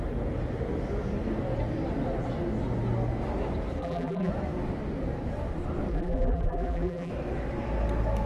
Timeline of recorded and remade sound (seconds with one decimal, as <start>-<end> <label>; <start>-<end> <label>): 0.0-3.8 recorded; 3.8-4.3 remade; 4.3-5.9 recorded; 5.9-7.1 remade; 7.1-8.3 recorded

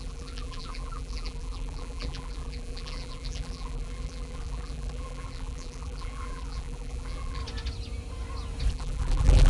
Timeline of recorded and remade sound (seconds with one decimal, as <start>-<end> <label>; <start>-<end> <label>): 0.0-7.4 remade; 7.4-8.7 recorded; 8.7-9.5 remade

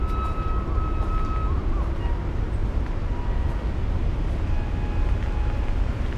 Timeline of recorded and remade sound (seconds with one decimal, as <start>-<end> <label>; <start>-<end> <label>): 0.0-2.6 recorded; 2.6-3.5 remade; 3.5-6.2 recorded

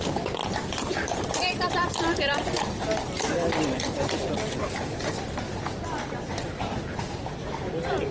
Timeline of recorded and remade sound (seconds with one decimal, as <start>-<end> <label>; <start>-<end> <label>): 0.0-0.4 recorded; 0.4-1.7 remade; 1.7-8.1 recorded

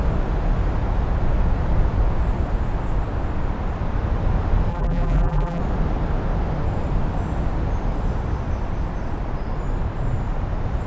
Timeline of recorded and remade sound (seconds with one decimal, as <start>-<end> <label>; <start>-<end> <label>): 0.0-4.7 recorded; 4.7-5.6 remade; 5.6-10.9 recorded

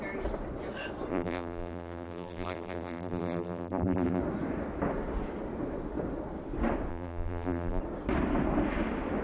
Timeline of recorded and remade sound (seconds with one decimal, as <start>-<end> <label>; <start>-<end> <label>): 0.0-1.1 recorded; 1.1-4.2 remade; 4.2-6.9 recorded; 6.9-7.8 remade; 7.8-9.2 recorded